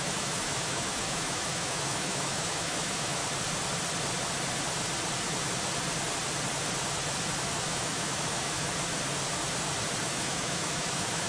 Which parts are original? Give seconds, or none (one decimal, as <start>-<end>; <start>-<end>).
3.2-7.7; 8.7-10.0